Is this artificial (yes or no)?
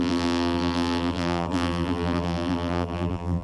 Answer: yes